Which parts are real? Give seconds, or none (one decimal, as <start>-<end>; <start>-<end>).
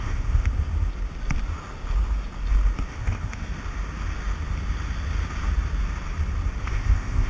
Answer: 0.5-2.9; 3.5-6.6